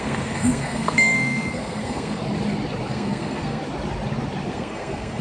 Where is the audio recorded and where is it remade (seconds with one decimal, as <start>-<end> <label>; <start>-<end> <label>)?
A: 0.0-2.2 remade; 2.2-2.9 recorded; 2.9-3.6 remade; 3.6-4.5 recorded; 4.5-5.2 remade